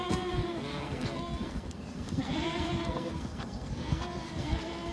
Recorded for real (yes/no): no